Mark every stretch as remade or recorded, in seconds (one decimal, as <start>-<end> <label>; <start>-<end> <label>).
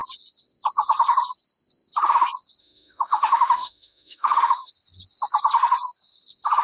0.0-2.6 recorded; 2.6-4.7 remade; 4.7-6.6 recorded